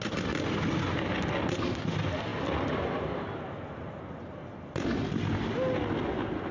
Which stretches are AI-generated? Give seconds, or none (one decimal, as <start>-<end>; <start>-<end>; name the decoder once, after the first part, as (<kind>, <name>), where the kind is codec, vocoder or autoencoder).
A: none